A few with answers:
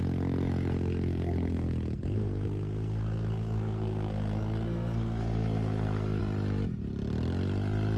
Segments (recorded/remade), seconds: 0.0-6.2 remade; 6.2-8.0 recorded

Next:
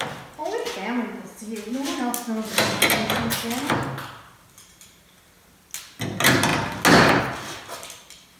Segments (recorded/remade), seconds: 0.0-8.4 recorded